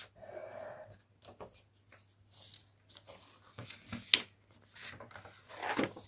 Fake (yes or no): no